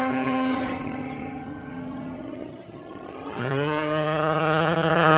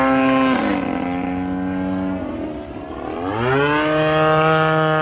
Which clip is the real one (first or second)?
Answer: second